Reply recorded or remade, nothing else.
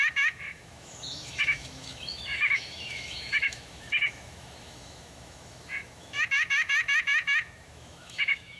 remade